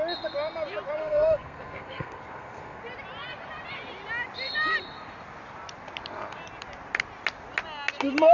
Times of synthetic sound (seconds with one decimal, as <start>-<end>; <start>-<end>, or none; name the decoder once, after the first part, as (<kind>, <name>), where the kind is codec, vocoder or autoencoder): 1.0-2.8 (codec, SNAC)